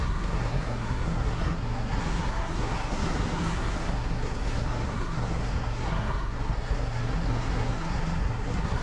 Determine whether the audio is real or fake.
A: fake